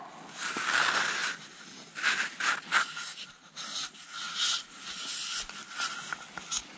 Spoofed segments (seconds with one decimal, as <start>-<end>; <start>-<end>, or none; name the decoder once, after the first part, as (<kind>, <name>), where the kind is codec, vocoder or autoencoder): 3.7-5.1 (vocoder, Vocos)